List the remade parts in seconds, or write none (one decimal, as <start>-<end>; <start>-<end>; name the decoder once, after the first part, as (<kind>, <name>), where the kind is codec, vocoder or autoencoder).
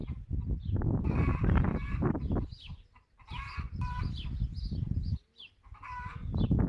none